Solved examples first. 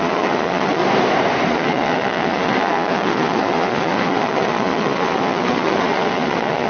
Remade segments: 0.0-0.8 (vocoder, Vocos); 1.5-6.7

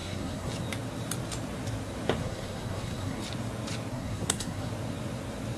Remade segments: 0.0-0.5 (codec, SNAC); 2.2-3.2; 3.9-4.7

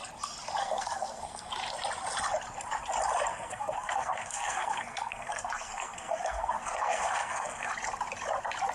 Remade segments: 0.6-1.5 (codec, SNAC); 3.3-7.7

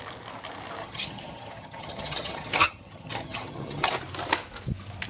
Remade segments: 0.8-3.9 (vocoder, HiFi-GAN)

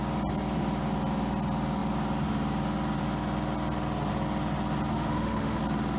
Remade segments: 4.9-5.6 (autoencoder, DAC-VAE)

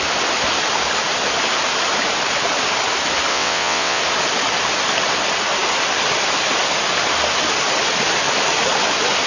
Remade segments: 3.3-4.0 (vocoder, WaveNeXt)

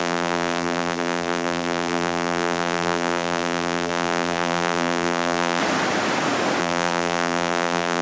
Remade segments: 0.0-5.6 (vocoder, BigVGAN v2); 6.6-8.0